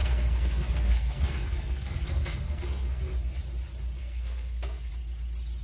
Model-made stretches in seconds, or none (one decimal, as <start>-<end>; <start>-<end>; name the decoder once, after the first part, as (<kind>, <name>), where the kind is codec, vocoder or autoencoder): 0.0-3.4 (codec, SNAC); 4.0-4.9

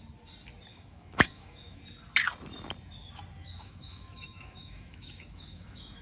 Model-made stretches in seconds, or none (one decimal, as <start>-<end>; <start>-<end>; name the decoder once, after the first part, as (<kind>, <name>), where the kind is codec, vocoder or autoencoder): 0.7-1.8 (autoencoder, DAC-VAE); 3.4-6.0